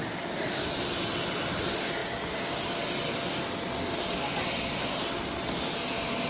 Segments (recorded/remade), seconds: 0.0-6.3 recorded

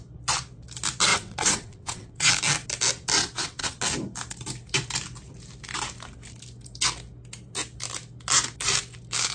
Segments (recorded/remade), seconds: 0.0-1.1 recorded; 1.1-2.3 remade; 2.3-3.2 recorded; 3.2-3.8 remade; 3.8-9.3 recorded

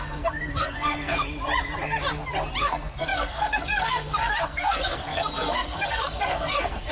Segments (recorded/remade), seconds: 0.0-1.2 remade; 1.2-2.6 recorded; 2.6-6.9 remade

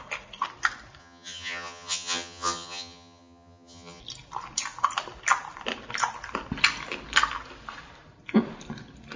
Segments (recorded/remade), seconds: 0.0-1.0 recorded; 1.0-4.0 remade; 4.0-9.2 recorded

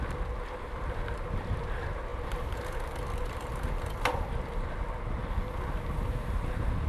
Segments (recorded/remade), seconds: 0.0-6.9 recorded

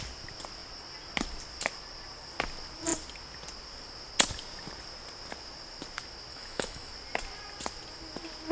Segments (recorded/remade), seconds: 0.0-6.3 recorded; 6.3-6.9 remade; 6.9-8.5 recorded

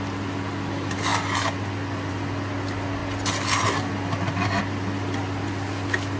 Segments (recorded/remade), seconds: 0.0-6.2 recorded

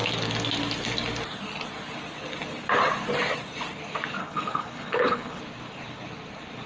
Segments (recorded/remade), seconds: 0.0-4.2 recorded; 4.2-5.4 remade; 5.4-6.7 recorded